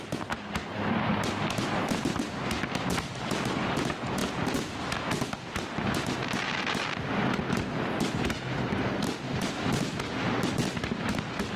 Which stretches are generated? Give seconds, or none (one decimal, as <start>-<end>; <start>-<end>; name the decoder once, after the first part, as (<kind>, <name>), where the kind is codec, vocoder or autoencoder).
none